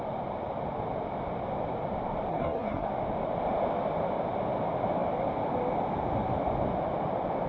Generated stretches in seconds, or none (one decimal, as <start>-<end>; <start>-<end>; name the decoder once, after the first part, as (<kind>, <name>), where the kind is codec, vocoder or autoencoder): 2.3-2.9 (codec, SNAC)